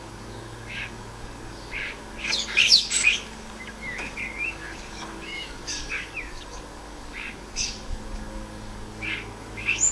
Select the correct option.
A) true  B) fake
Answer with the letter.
B